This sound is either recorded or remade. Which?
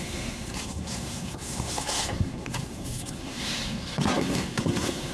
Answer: remade